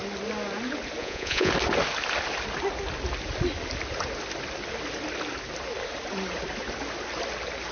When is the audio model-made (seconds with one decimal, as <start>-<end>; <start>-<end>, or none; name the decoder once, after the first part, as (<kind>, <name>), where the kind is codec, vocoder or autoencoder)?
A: 1.0-1.5 (vocoder, Vocos)